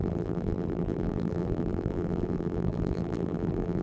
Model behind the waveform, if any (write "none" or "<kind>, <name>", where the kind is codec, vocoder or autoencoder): vocoder, BigVGAN v2